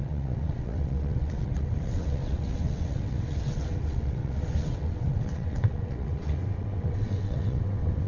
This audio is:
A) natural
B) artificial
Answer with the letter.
B